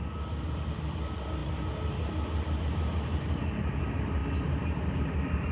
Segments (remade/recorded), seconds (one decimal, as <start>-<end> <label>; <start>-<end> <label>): 0.0-5.5 recorded